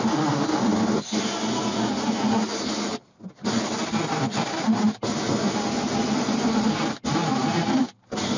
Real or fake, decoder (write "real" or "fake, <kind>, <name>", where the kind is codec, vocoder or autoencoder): real